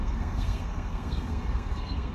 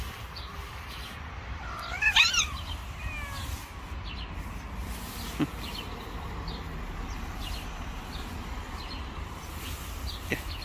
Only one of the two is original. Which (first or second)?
second